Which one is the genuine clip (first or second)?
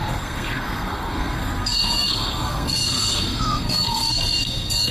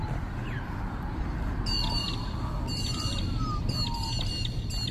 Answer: second